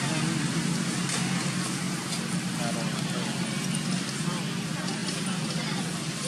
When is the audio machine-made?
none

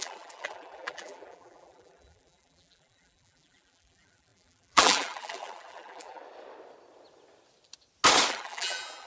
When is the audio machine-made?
0.0-6.2 (vocoder, BigVGAN v2); 8.3-9.1